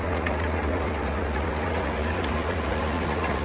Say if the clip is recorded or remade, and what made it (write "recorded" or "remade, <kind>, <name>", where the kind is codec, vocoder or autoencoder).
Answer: remade, vocoder, Vocos